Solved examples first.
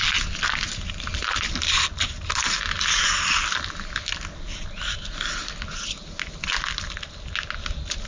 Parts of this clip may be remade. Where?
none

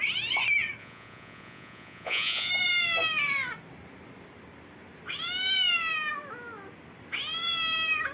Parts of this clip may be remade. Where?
0.8-2.5